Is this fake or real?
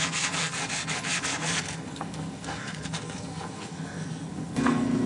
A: fake